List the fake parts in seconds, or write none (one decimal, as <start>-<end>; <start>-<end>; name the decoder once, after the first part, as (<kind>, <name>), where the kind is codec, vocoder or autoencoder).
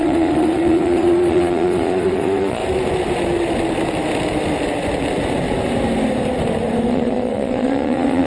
0.0-2.6 (vocoder, Vocos); 6.9-8.3